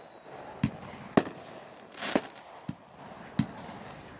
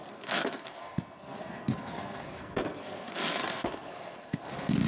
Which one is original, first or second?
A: first